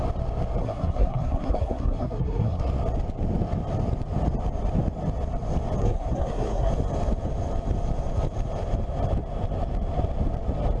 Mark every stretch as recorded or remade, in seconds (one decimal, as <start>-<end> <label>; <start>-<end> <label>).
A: 0.0-0.6 recorded; 0.6-2.6 remade; 2.6-5.8 recorded; 5.8-6.7 remade; 6.7-10.8 recorded